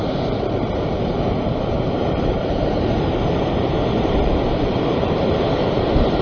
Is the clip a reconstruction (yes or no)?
yes